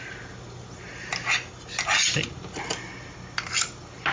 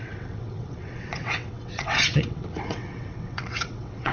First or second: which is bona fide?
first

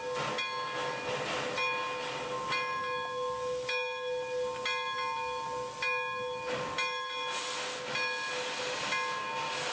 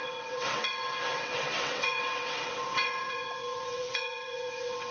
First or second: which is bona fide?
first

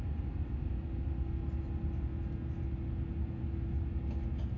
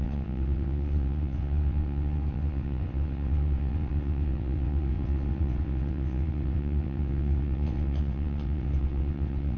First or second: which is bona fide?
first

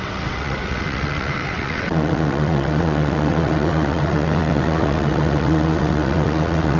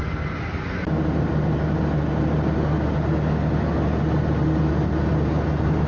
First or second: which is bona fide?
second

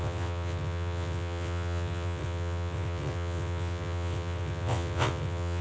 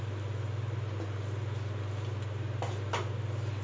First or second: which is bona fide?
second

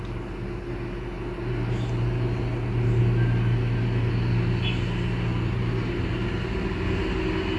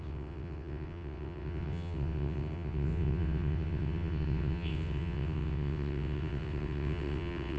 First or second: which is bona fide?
first